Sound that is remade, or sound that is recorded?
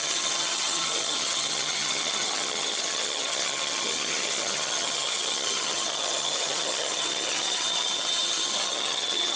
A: remade